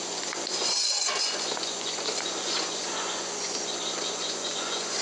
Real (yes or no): no